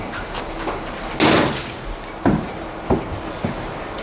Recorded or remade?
recorded